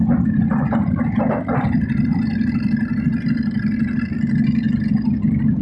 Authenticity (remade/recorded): remade